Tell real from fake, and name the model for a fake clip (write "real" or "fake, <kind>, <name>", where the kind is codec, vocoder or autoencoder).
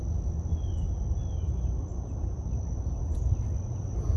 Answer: real